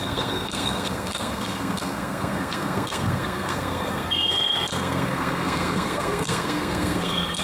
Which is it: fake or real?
fake